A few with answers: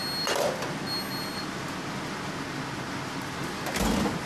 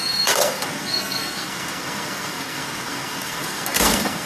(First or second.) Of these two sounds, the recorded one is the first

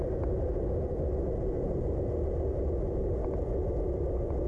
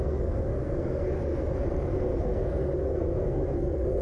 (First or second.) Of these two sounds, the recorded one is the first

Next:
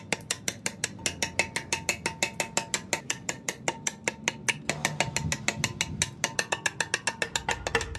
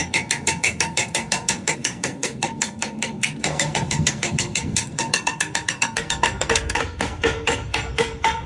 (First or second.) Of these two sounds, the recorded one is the first